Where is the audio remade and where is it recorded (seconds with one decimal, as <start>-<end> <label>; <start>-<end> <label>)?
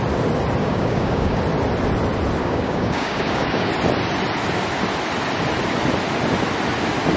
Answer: 0.0-0.6 recorded; 0.6-1.4 remade; 1.4-2.4 recorded; 2.4-3.7 remade; 3.7-7.2 recorded